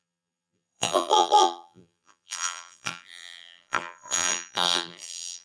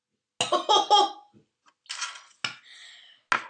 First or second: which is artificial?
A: first